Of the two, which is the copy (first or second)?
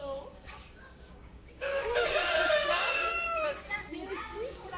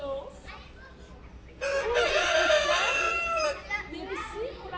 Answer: first